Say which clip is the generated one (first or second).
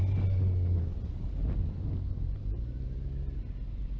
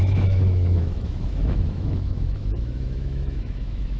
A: second